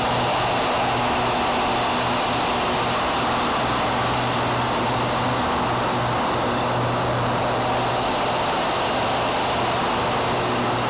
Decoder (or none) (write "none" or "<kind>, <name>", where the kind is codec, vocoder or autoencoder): none